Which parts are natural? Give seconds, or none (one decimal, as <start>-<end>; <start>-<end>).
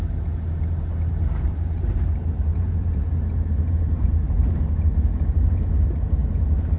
0.0-2.5; 3.1-6.8